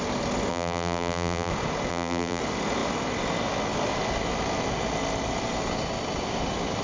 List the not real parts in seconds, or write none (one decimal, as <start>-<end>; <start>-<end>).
0.5-1.5; 1.9-2.4